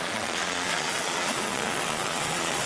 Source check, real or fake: fake